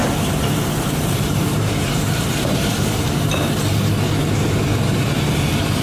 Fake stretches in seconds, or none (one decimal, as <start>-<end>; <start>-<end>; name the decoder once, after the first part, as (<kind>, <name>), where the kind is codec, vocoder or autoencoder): 0.0-3.5 (vocoder, BigVGAN v2)